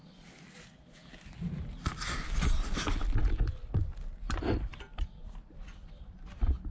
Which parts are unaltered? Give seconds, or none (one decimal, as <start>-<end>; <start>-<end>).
0.0-6.7